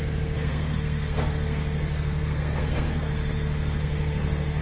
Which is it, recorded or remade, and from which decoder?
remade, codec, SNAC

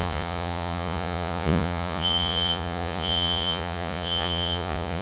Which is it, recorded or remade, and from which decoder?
remade, vocoder, Vocos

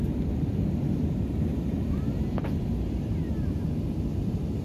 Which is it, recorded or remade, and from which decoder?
recorded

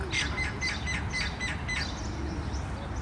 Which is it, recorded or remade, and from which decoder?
recorded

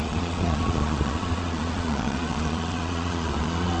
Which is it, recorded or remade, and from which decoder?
remade, vocoder, Vocos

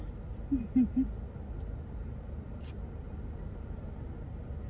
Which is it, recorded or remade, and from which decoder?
recorded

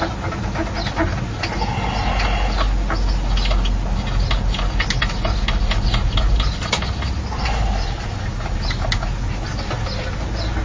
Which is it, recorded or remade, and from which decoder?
recorded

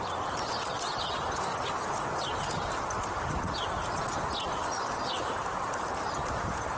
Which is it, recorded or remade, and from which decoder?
recorded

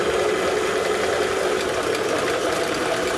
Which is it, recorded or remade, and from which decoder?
recorded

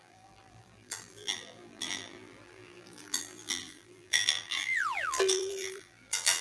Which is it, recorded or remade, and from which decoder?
remade, vocoder, BigVGAN v2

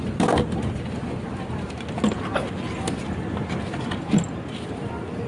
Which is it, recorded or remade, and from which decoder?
recorded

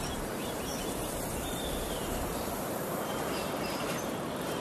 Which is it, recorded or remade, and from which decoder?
remade, vocoder, BigVGAN v2